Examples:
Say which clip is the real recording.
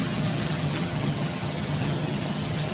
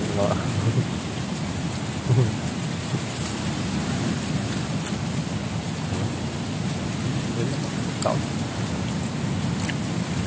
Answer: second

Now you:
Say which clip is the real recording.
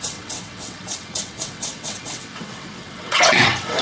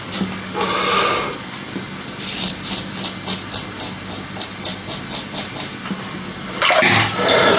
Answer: second